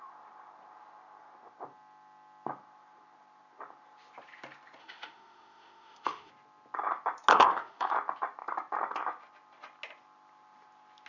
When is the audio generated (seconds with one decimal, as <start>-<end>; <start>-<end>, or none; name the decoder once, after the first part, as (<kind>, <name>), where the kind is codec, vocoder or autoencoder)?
4.8-6.3 (autoencoder, DAC-VAE); 7.3-7.9

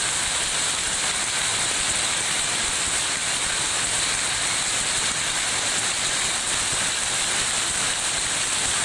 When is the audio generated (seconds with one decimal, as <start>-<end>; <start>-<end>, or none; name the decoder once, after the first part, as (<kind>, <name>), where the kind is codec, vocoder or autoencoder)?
none

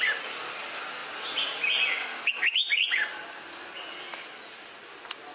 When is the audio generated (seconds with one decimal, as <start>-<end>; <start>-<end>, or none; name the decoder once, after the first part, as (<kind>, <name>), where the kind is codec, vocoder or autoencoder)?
none

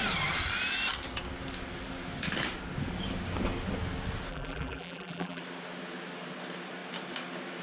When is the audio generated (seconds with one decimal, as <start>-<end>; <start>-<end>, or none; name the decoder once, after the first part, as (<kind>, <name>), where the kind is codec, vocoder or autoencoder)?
4.3-5.4 (vocoder, BigVGAN v2)

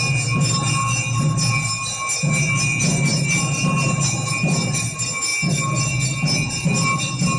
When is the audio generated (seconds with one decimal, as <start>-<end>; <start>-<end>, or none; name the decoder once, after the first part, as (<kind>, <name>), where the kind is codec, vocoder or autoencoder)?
none

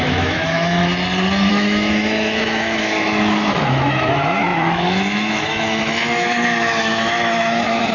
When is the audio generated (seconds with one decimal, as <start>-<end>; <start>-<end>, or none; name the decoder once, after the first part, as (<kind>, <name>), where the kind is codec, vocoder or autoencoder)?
0.0-0.8 (autoencoder, DAC-VAE); 1.5-7.9